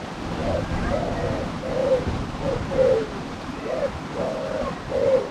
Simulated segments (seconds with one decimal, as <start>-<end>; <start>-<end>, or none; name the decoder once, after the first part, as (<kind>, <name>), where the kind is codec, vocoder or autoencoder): 1.8-3.9 (vocoder, BigVGAN v2)